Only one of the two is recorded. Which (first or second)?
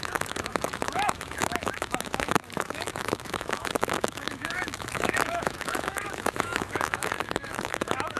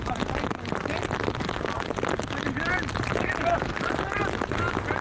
second